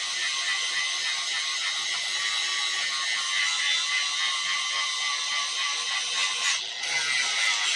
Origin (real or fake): real